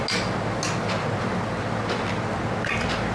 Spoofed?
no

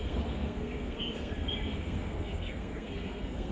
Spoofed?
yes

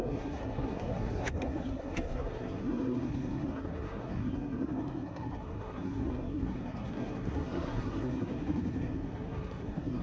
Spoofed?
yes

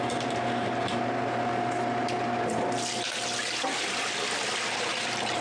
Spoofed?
no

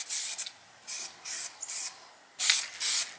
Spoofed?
no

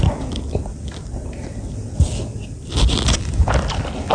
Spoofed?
no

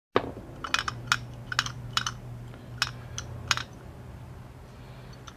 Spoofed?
no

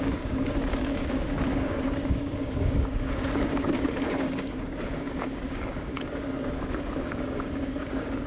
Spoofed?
yes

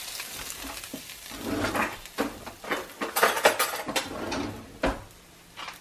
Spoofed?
no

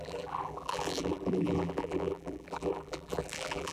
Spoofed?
yes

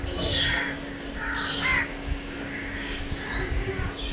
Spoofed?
yes